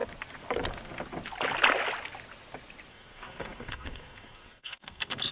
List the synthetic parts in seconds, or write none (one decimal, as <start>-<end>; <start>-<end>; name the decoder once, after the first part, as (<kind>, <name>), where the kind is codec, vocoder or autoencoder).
2.9-5.3 (codec, SNAC)